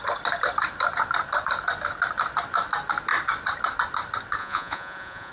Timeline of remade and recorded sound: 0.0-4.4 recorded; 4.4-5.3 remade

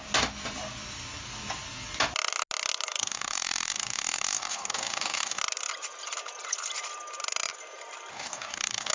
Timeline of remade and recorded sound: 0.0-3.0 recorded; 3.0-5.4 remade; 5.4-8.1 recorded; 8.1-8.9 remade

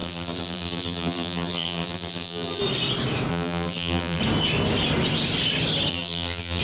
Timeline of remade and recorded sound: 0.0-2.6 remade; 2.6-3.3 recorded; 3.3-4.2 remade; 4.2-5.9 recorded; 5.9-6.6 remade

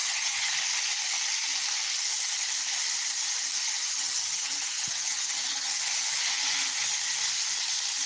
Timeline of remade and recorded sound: 0.0-0.5 remade; 0.5-3.8 recorded; 3.8-5.7 remade; 5.7-8.1 recorded

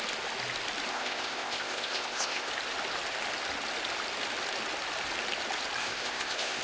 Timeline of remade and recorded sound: 0.0-0.9 recorded; 0.9-2.5 remade; 2.5-5.8 recorded; 5.8-6.6 remade

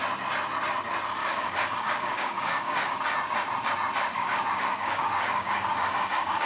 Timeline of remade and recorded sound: 0.0-1.2 recorded; 1.2-3.0 remade; 3.0-4.1 recorded; 4.1-6.5 remade

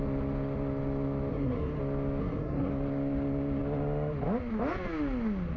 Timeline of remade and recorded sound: 0.0-1.3 recorded; 1.3-1.8 remade; 1.8-2.2 recorded; 2.2-2.7 remade; 2.7-5.6 recorded

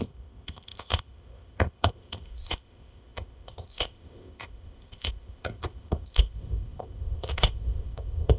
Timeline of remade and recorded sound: 0.0-8.4 remade